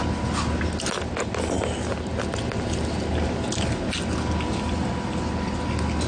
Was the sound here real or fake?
real